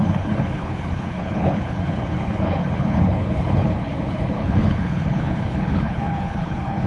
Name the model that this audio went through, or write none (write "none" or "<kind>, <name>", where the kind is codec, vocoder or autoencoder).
codec, HILCodec